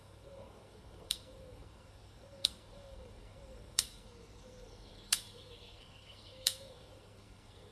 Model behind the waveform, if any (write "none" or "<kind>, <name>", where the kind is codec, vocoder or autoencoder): codec, SNAC